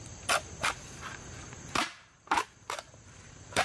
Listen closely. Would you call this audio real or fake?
fake